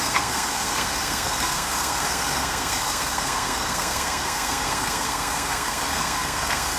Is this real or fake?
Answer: fake